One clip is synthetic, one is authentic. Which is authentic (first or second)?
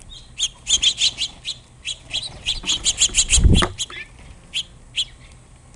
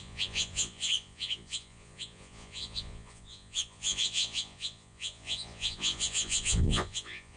first